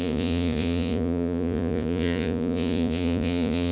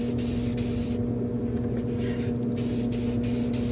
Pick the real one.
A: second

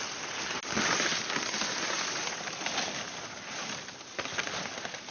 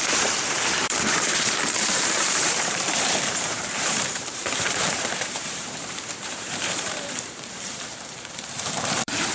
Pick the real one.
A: first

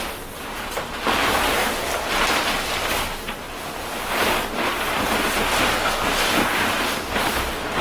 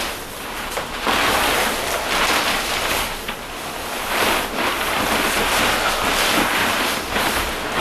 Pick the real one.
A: first